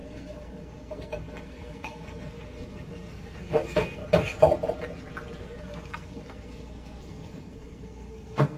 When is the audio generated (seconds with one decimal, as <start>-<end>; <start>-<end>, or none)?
0.0-4.0; 5.4-8.6